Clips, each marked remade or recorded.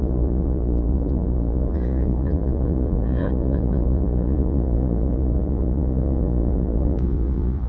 remade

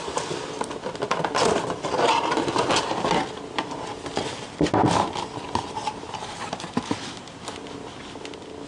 recorded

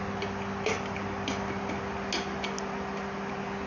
recorded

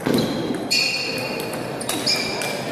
recorded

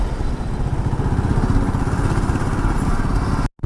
recorded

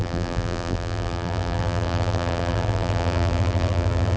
remade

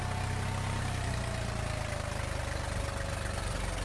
recorded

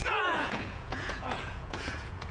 remade